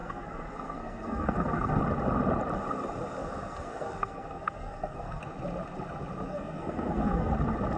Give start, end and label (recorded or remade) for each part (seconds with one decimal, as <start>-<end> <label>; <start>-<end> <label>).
0.0-1.8 remade; 1.8-3.2 recorded; 3.2-5.2 remade; 5.2-6.3 recorded; 6.3-7.3 remade; 7.3-7.8 recorded